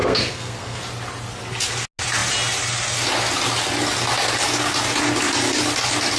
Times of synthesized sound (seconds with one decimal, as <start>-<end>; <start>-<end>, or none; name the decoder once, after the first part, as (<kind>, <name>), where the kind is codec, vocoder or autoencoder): 0.0-0.8 (codec, SNAC)